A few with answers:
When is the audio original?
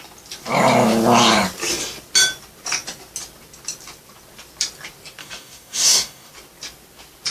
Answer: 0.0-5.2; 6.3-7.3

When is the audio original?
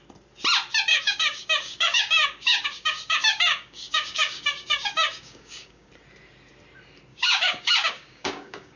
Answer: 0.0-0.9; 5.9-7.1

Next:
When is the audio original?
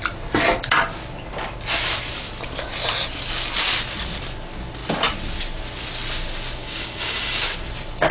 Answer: 0.0-6.6; 7.4-8.1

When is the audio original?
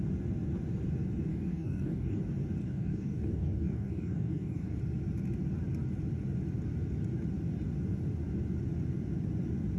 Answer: 0.0-1.3; 2.2-2.6; 4.8-9.8